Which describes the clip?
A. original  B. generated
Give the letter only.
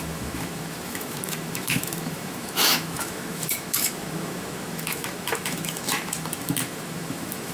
B